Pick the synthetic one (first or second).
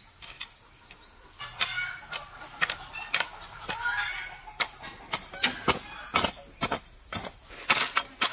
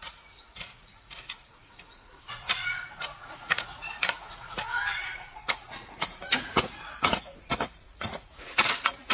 second